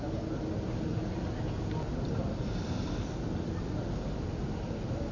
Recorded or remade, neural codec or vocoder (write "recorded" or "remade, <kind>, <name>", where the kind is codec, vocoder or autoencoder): recorded